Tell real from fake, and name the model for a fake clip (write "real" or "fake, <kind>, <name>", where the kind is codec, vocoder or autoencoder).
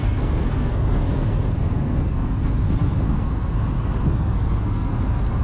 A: fake, codec, SNAC